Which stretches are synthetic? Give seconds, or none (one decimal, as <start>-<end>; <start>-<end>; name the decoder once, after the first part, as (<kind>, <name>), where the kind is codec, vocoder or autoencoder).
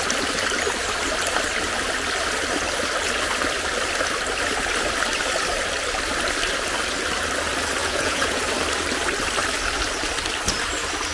7.8-8.4 (vocoder, Vocos)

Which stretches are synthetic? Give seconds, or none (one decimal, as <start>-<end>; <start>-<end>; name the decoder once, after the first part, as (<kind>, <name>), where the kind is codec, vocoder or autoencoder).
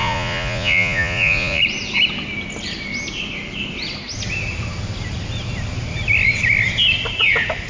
0.0-1.6 (vocoder, Vocos)